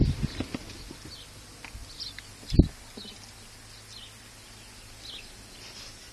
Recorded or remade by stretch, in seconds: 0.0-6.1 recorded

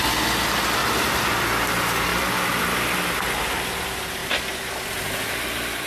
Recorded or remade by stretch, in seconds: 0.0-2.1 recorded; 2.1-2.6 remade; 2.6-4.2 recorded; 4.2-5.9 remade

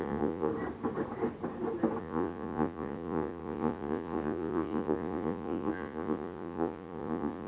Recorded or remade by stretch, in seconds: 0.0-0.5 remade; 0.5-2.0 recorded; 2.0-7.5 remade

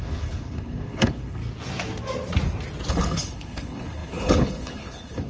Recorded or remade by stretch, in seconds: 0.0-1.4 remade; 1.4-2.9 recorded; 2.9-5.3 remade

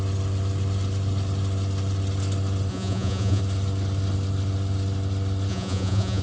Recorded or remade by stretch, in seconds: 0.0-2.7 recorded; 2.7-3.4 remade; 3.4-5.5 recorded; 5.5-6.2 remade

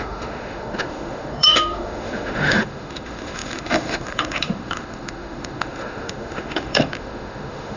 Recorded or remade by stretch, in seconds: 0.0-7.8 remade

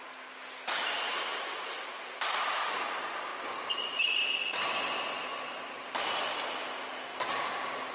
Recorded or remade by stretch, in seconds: 0.0-7.1 recorded; 7.1-7.9 remade